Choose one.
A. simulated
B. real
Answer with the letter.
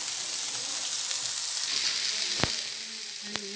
B